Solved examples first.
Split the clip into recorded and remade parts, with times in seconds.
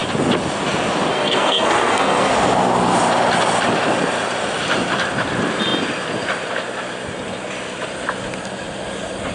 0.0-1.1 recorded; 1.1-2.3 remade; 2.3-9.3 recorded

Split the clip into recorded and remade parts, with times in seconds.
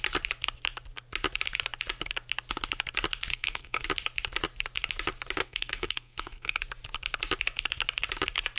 0.0-3.3 recorded; 3.3-3.9 remade; 3.9-5.4 recorded; 5.4-6.6 remade; 6.6-8.6 recorded